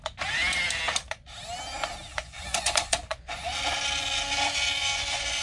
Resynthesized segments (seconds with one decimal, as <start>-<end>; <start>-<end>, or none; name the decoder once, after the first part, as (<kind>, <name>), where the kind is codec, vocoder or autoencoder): 2.1-3.5 (vocoder, Vocos); 4.8-5.4